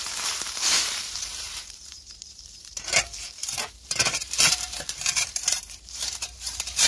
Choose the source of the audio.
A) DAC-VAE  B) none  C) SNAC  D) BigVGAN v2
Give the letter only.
D